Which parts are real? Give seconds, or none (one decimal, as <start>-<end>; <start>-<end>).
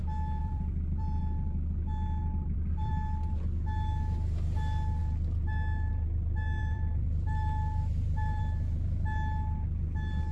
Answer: 0.0-0.4; 1.2-2.2; 2.9-6.6; 8.4-10.3